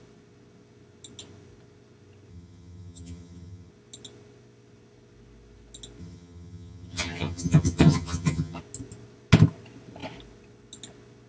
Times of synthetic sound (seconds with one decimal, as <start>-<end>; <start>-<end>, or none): 2.3-3.7; 6.0-8.6